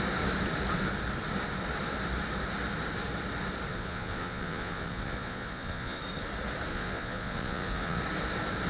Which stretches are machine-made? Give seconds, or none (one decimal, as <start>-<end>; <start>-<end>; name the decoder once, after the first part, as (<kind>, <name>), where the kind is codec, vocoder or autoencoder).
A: 3.7-6.0 (vocoder, Vocos); 6.7-8.0